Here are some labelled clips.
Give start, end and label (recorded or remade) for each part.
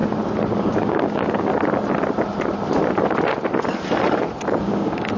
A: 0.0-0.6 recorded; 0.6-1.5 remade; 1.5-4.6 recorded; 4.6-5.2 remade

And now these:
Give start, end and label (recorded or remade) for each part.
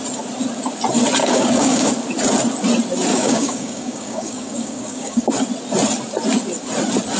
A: 0.0-1.2 recorded; 1.2-1.9 remade; 1.9-3.1 recorded; 3.1-5.3 remade; 5.3-7.2 recorded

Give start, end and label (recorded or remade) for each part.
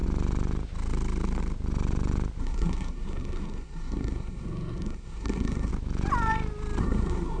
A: 0.0-2.4 recorded; 2.4-5.7 remade; 5.7-6.8 recorded; 6.8-7.4 remade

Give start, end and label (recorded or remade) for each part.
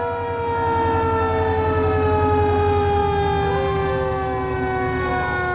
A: 0.0-5.5 recorded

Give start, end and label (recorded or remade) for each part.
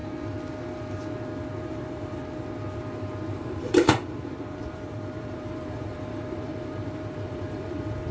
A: 0.0-1.6 recorded; 1.6-2.2 remade; 2.2-3.3 recorded; 3.3-8.1 remade